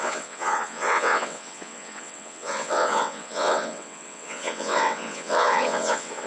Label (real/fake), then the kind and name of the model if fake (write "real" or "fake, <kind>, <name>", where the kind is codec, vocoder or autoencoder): fake, vocoder, WaveNeXt